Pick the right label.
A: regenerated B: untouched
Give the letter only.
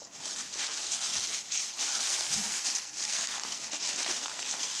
A